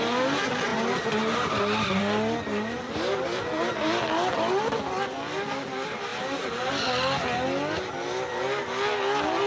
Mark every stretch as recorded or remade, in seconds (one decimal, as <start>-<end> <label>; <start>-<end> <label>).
0.0-6.1 recorded; 6.1-6.7 remade; 6.7-9.5 recorded